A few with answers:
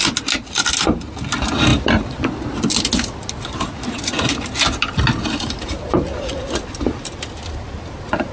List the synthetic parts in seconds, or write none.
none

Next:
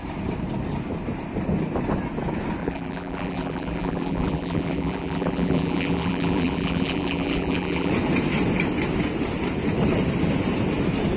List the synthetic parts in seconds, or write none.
2.6-7.9 (vocoder, BigVGAN v2)

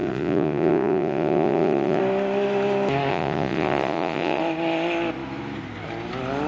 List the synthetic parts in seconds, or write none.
0.0-2.0 (vocoder, Vocos); 3.1-4.4

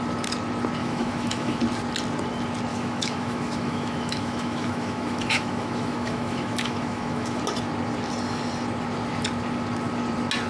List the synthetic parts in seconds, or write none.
0.8-1.6 (autoencoder, DAC-VAE); 2.7-7.4

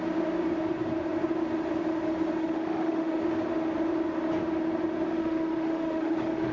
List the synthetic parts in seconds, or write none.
2.4-3.2 (autoencoder, DAC-VAE); 5.2-6.5